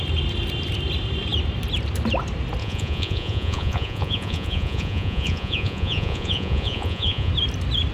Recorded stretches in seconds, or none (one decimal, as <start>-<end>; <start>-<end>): 0.0-2.6; 7.3-7.9